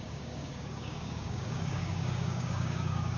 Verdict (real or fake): fake